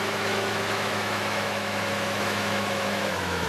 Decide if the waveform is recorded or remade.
remade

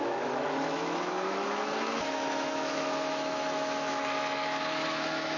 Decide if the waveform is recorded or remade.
remade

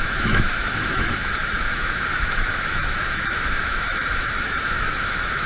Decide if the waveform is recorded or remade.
remade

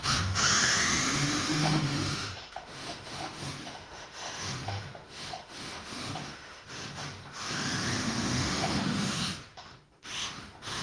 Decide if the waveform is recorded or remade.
remade